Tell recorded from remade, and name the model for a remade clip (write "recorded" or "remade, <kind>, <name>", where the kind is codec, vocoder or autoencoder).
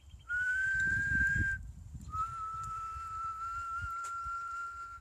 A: remade, vocoder, BigVGAN v2